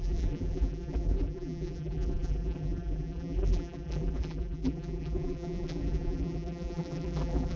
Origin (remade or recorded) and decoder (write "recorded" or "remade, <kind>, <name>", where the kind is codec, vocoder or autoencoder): remade, vocoder, BigVGAN v2